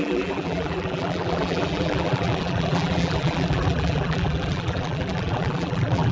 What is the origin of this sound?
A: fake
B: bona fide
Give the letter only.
A